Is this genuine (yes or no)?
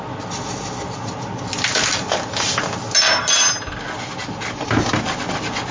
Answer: yes